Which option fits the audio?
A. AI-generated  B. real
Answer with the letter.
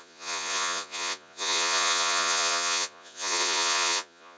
A